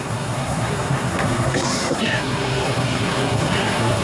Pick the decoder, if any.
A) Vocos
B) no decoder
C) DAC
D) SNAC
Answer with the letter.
D